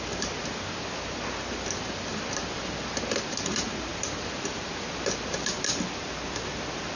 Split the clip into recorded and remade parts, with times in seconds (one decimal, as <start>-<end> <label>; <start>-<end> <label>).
0.0-7.0 recorded